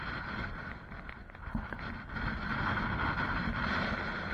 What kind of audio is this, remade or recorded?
recorded